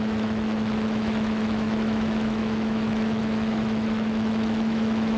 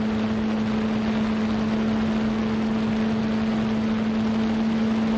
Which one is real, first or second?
second